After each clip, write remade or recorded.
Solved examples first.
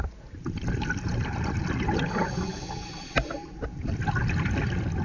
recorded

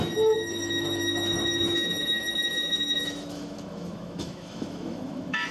remade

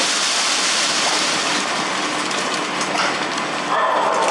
recorded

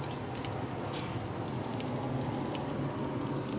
recorded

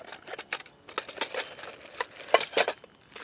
recorded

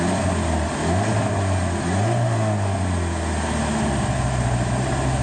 recorded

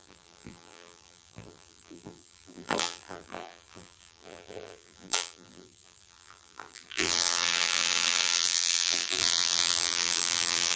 remade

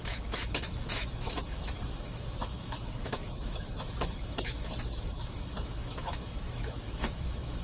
remade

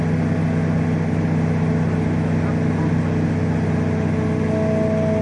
recorded